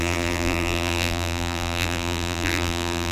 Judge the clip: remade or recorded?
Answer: remade